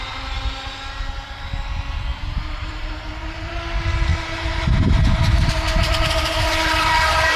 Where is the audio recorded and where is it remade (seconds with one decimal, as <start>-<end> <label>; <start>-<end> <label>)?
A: 0.0-2.1 recorded; 2.1-3.6 remade; 3.6-4.1 recorded; 4.1-7.4 remade